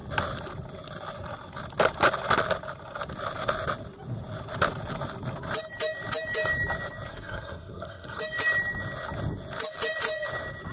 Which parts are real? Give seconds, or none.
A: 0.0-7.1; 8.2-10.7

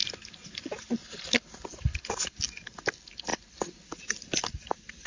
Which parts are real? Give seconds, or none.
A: 0.0-5.1

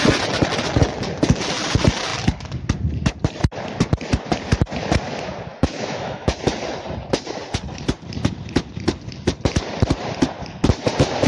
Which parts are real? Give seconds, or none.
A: 0.0-5.5; 6.4-11.3

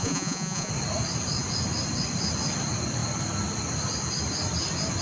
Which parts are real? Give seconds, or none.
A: 0.7-5.0